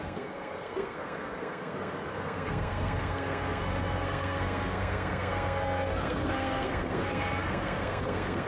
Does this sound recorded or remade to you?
remade